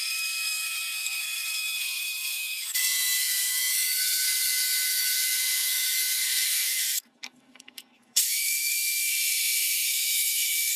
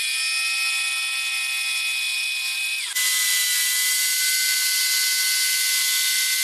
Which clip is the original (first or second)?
second